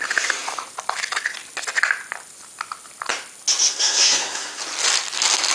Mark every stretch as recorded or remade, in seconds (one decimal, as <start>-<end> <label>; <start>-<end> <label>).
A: 0.0-3.7 recorded; 3.7-4.6 remade; 4.6-5.5 recorded